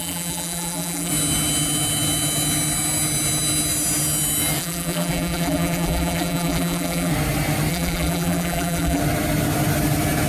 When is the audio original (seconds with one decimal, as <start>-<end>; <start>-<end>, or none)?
1.1-4.6; 7.1-7.7; 9.0-10.3